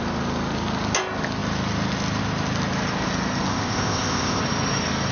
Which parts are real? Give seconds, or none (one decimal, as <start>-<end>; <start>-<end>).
0.0-3.5; 4.4-5.1